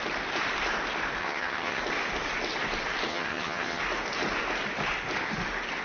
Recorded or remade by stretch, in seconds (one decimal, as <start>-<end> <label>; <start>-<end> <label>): 0.0-1.2 recorded; 1.2-1.8 remade; 1.8-3.1 recorded; 3.1-3.8 remade; 3.8-5.8 recorded